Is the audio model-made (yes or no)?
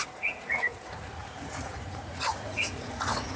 yes